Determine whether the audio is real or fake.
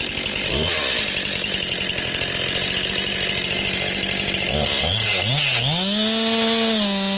real